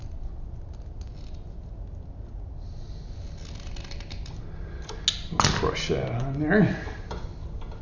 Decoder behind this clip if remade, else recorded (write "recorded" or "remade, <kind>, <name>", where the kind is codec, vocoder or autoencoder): recorded